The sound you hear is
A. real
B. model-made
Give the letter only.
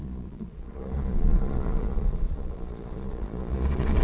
B